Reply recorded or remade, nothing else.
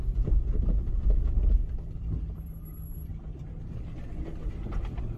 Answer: recorded